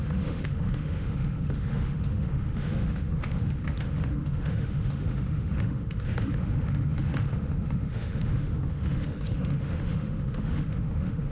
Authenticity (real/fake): fake